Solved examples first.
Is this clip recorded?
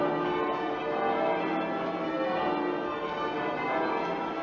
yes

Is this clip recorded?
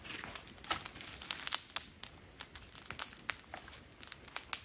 yes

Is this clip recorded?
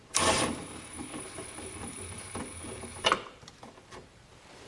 no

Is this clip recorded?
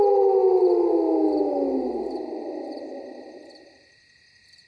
yes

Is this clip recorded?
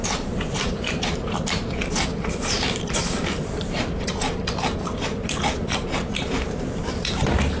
no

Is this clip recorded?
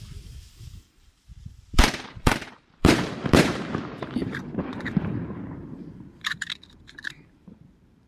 no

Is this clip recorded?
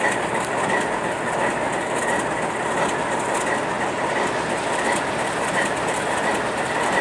yes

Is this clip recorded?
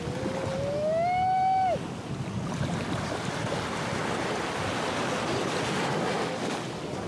yes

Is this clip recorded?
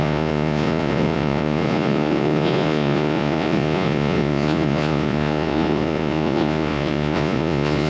no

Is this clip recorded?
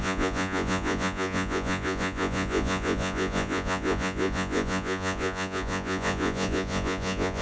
no